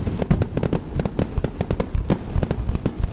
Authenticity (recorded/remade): recorded